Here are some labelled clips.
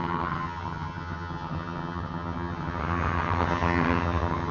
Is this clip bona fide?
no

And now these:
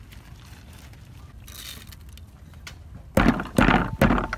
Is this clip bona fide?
yes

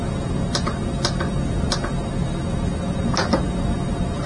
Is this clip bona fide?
yes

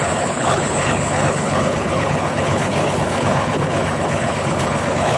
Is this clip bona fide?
no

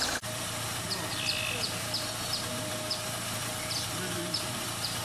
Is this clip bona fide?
no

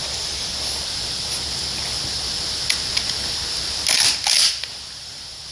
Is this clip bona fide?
yes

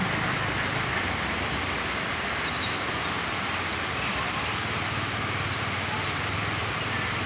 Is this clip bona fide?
no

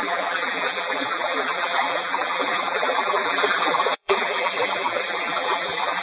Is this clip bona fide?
no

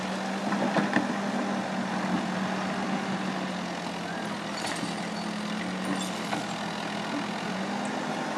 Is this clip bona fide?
yes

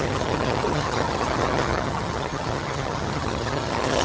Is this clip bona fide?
no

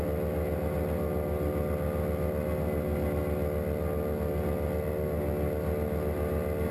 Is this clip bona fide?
yes